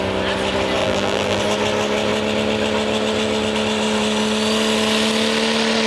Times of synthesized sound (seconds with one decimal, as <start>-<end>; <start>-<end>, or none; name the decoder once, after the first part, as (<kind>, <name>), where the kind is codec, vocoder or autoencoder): 0.8-1.4 (vocoder, BigVGAN v2)